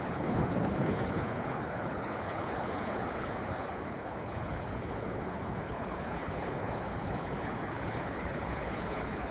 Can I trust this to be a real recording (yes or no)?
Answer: no